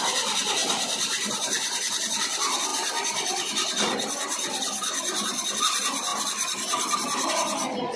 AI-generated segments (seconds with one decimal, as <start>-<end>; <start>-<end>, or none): 0.6-1.9; 2.7-5.6; 6.1-7.3